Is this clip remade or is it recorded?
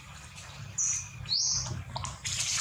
recorded